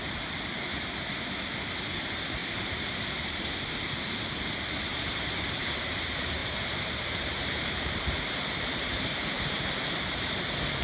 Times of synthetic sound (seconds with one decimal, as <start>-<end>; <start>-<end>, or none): 2.4-3.5; 4.9-5.4; 6.4-10.4